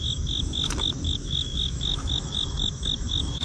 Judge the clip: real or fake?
fake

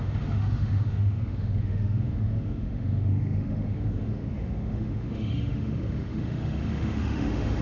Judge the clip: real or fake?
fake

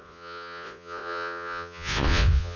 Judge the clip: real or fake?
fake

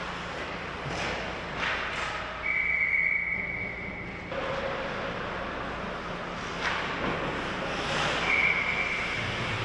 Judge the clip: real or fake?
real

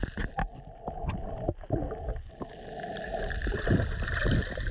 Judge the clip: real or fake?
real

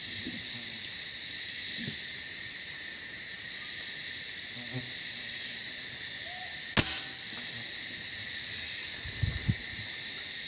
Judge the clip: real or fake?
real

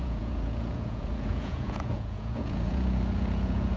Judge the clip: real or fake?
fake